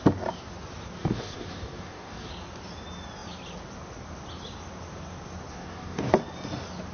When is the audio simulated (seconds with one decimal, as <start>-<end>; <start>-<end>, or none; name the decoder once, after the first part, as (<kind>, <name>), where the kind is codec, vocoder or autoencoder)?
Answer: 1.0-2.3 (codec, DAC); 5.5-6.1